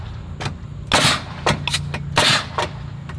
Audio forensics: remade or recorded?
recorded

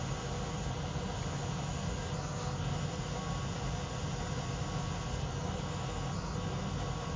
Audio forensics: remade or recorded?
recorded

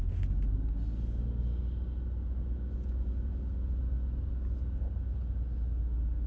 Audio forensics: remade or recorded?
recorded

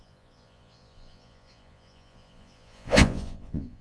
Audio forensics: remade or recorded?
remade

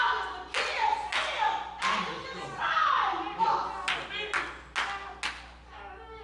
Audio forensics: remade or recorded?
recorded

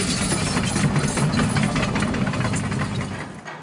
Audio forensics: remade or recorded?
recorded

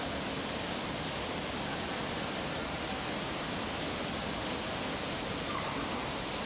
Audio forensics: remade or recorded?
recorded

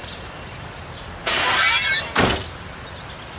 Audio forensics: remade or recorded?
recorded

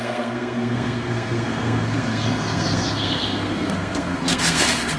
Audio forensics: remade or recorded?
remade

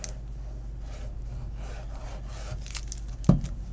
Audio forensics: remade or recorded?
recorded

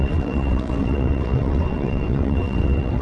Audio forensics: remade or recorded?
remade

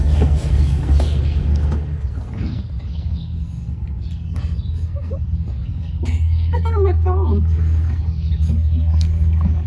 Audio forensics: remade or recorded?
remade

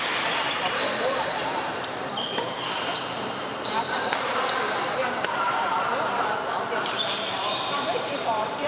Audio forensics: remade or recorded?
remade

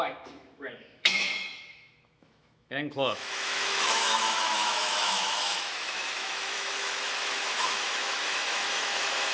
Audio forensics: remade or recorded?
remade